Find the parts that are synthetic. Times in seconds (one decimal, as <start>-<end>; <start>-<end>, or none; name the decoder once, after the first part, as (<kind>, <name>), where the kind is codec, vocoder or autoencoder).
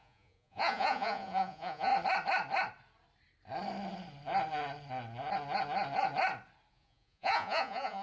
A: 0.0-1.9 (vocoder, Vocos); 6.7-8.0